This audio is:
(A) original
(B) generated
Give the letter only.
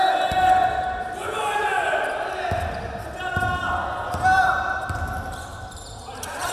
A